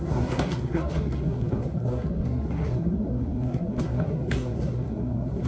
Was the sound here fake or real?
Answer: fake